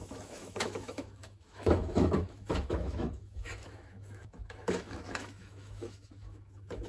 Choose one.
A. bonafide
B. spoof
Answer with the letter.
B